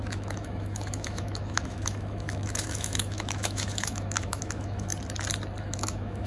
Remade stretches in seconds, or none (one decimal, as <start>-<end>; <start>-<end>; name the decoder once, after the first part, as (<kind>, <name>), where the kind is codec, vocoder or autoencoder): 0.0-4.9 (autoencoder, DAC-VAE); 5.6-6.3

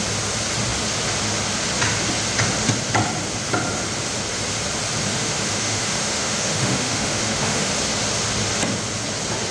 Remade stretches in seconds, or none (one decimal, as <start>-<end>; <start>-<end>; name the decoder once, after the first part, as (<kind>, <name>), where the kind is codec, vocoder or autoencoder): 5.1-7.7 (autoencoder, DAC-VAE)

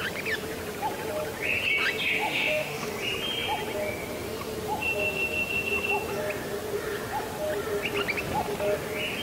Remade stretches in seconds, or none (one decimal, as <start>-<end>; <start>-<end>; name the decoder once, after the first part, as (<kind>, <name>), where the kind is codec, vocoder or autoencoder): 2.2-2.9 (autoencoder, DAC-VAE)

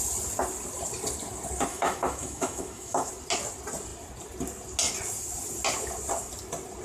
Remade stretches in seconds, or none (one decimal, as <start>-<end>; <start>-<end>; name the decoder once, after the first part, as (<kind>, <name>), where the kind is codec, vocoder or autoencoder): 1.7-3.1 (autoencoder, DAC-VAE)

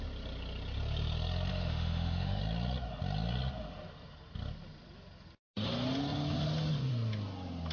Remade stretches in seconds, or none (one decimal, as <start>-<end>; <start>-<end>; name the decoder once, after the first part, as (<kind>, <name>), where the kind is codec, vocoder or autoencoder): 1.5-2.4 (autoencoder, DAC-VAE)

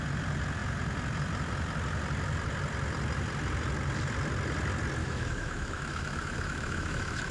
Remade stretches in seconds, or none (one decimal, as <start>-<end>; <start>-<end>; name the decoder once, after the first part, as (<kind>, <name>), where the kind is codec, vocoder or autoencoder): 5.0-7.3 (autoencoder, DAC-VAE)

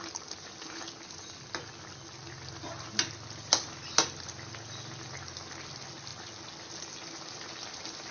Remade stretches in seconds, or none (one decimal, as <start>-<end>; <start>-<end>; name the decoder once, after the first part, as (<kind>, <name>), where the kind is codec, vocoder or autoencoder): none

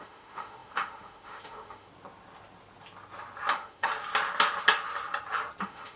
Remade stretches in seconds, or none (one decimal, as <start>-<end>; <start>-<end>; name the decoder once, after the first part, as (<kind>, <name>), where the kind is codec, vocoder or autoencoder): 0.0-1.9 (autoencoder, DAC-VAE); 3.5-3.9; 5.6-6.0